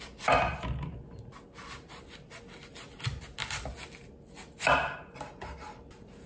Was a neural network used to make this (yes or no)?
no